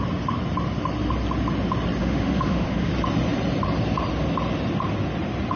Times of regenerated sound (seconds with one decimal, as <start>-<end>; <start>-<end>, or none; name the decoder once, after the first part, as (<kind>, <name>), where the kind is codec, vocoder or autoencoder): 2.0-2.9 (autoencoder, DAC-VAE)